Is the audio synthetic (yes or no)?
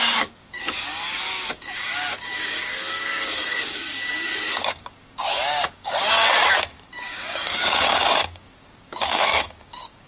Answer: yes